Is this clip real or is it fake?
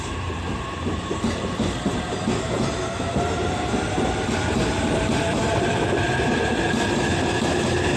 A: fake